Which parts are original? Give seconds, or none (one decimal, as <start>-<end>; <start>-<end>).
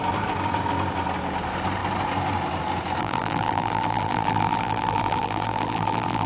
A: 0.0-3.0